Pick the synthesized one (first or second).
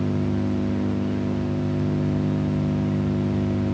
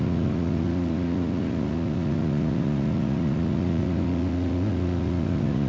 second